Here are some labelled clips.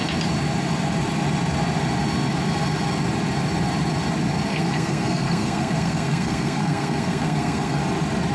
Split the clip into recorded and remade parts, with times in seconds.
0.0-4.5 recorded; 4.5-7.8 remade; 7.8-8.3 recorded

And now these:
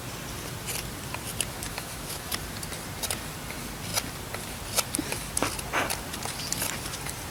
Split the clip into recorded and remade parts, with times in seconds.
0.0-1.7 recorded; 1.7-2.3 remade; 2.3-7.3 recorded

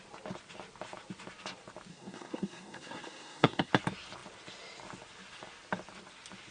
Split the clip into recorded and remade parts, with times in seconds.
0.0-1.9 recorded; 1.9-3.7 remade; 3.7-6.5 recorded

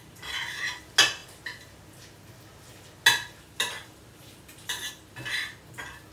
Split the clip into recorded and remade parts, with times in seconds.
0.0-6.1 recorded

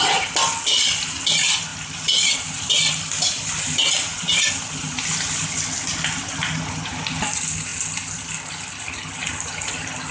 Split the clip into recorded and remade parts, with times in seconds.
0.0-10.1 recorded

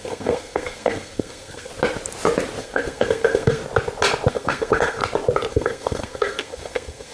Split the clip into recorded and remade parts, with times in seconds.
0.0-1.7 remade; 1.7-2.6 recorded; 2.6-3.6 remade; 3.6-4.3 recorded; 4.3-5.0 remade; 5.0-5.5 recorded; 5.5-7.1 remade